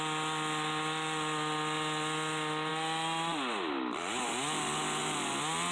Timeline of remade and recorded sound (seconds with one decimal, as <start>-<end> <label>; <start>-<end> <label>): 0.0-5.7 recorded